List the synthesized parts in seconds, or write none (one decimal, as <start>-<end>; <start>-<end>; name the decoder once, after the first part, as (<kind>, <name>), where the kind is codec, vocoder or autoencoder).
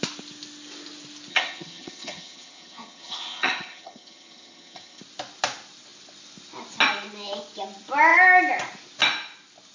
1.3-5.0 (vocoder, HiFi-GAN)